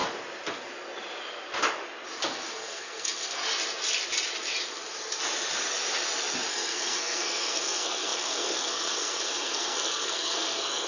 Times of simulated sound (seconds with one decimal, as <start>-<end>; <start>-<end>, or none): 2.6-3.4; 6.5-10.9